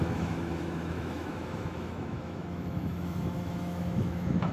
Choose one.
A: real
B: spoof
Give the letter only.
B